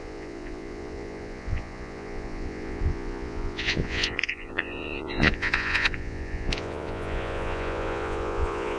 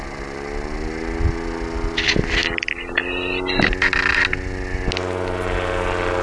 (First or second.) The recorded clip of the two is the second